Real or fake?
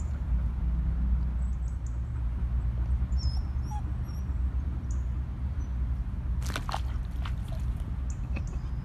real